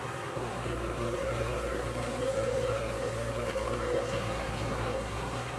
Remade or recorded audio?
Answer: remade